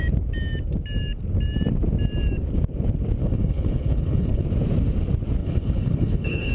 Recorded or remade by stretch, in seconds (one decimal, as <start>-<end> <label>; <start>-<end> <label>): 0.0-3.2 recorded; 3.2-4.4 remade; 4.4-5.4 recorded; 5.4-6.5 remade

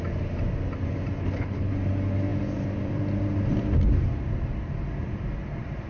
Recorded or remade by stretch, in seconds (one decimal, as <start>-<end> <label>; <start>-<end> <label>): 0.0-1.2 recorded; 1.2-1.7 remade; 1.7-5.9 recorded

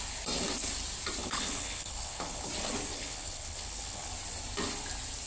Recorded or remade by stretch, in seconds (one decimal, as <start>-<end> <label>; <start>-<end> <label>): 0.0-1.2 recorded; 1.2-2.5 remade; 2.5-2.9 recorded; 2.9-4.1 remade; 4.1-5.3 recorded

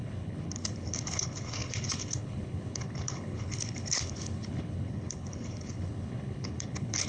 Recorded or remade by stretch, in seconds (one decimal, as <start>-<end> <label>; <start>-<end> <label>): 0.0-7.1 remade

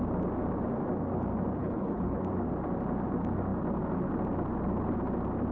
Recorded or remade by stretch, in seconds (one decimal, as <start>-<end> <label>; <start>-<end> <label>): 0.0-1.6 recorded; 1.6-2.2 remade; 2.2-5.5 recorded

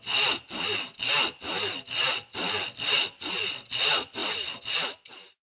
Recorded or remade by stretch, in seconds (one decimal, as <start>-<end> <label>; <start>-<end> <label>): 0.0-5.5 recorded